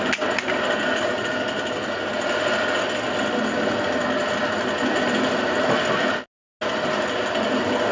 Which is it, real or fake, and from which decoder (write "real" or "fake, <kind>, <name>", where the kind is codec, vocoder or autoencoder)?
real